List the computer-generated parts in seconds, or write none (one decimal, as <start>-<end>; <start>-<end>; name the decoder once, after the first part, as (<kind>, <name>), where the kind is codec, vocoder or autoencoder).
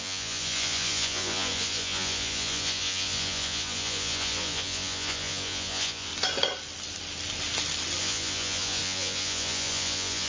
0.0-6.1 (vocoder, Vocos); 8.0-10.3